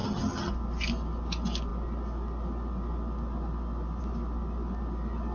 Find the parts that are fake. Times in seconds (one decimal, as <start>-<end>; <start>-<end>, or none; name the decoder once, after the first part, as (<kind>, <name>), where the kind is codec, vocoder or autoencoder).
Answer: 0.0-0.5 (vocoder, HiFi-GAN)